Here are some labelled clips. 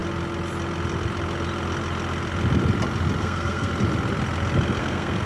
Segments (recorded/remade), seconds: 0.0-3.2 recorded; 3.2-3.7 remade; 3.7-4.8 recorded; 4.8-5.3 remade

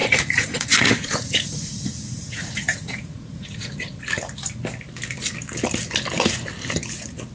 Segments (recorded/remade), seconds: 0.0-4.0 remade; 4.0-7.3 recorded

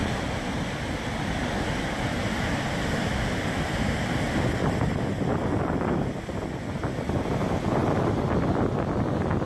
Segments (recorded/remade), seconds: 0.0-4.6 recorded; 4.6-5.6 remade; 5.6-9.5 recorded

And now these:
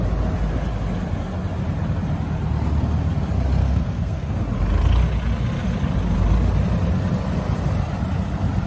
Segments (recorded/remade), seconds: 0.0-3.6 recorded; 3.6-4.4 remade; 4.4-8.7 recorded

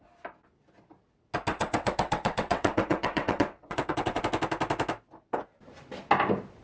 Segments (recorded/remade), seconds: 0.0-1.5 recorded; 1.5-4.2 remade; 4.2-6.6 recorded